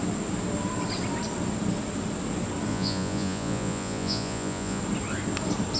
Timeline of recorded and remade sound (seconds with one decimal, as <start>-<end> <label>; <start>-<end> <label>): 0.0-2.7 recorded; 2.7-4.8 remade; 4.8-5.8 recorded